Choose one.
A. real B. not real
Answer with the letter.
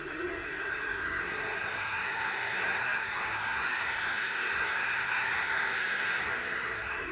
B